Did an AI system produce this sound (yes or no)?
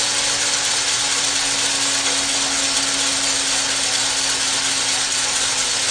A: no